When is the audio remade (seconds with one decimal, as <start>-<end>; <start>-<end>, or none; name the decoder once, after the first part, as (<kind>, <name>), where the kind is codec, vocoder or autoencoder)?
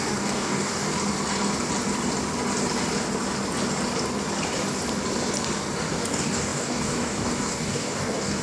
0.0-0.9 (codec, DAC); 5.9-8.4